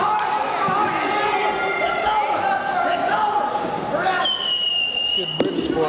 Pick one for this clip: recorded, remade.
recorded